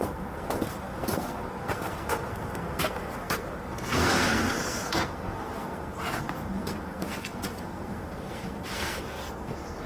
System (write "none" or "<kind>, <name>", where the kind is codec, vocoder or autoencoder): codec, SNAC